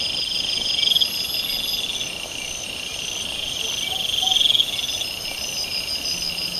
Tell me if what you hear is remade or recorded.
recorded